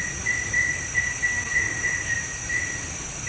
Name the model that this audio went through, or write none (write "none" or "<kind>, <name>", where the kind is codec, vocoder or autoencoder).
none